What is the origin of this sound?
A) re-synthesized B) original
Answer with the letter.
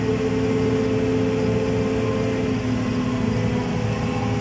B